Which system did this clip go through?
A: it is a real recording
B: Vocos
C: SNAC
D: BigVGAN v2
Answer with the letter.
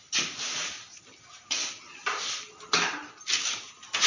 A